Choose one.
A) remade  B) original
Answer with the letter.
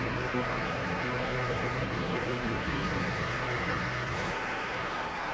A